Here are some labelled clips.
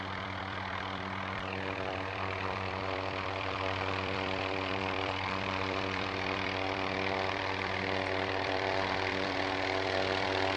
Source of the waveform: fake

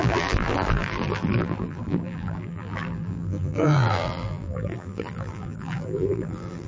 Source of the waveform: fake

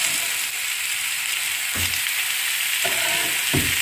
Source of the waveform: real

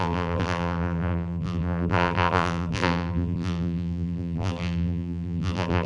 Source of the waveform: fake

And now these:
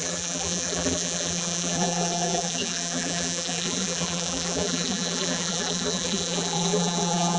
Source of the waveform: fake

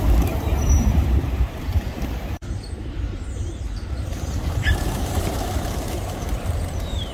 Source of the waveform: fake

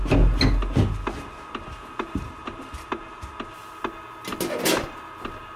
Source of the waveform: real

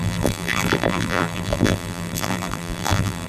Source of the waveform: fake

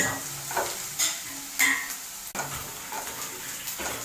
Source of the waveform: real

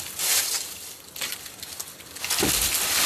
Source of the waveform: fake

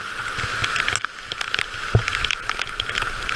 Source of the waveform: real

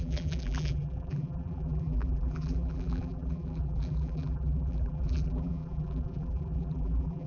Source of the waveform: fake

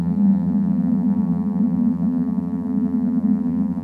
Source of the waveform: fake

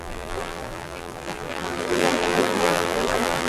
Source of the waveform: fake